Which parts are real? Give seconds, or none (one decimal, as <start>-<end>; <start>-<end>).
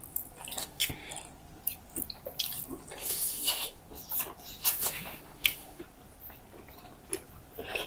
0.0-0.6; 1.1-3.0; 3.8-4.6; 5.8-7.9